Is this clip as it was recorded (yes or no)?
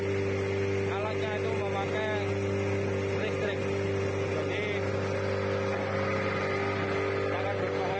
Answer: yes